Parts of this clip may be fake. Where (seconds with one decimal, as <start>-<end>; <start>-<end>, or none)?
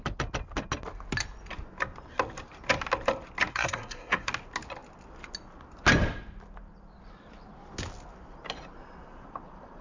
3.5-4.3